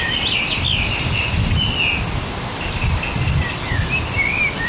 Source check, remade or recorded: recorded